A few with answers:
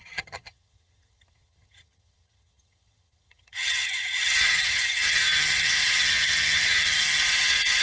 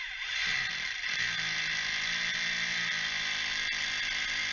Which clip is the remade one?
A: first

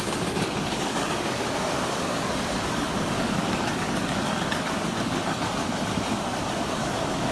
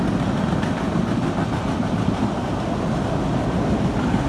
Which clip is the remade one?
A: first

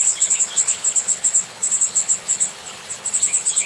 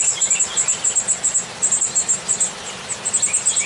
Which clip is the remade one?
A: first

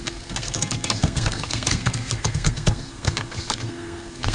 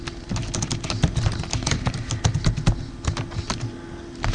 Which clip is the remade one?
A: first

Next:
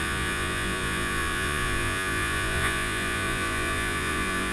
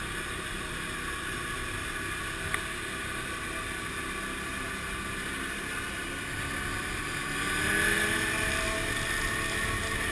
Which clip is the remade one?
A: first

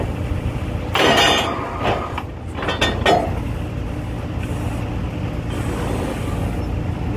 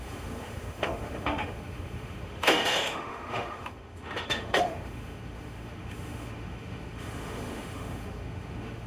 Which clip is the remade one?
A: second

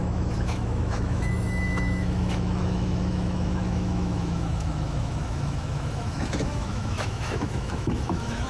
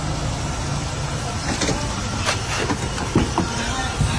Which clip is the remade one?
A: first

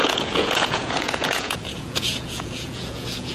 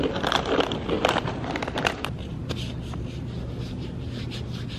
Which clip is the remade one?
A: first